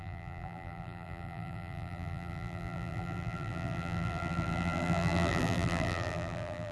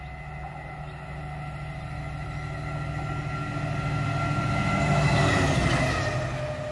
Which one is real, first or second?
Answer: second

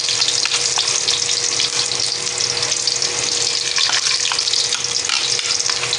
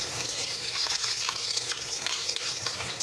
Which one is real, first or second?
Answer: first